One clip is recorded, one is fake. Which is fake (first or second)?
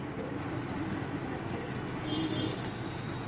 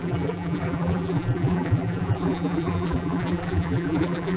second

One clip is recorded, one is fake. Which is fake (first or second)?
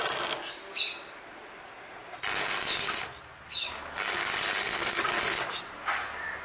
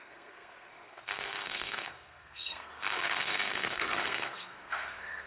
second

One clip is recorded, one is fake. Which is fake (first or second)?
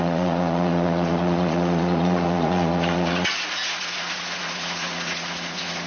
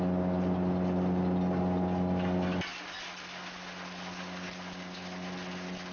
first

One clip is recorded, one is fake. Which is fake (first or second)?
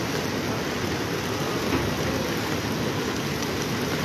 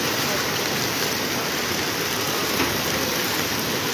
second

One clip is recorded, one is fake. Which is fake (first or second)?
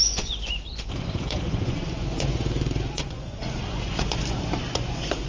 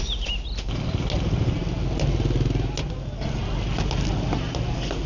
first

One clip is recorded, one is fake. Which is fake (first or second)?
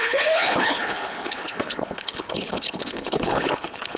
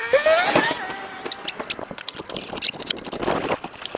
first